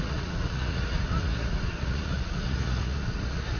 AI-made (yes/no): yes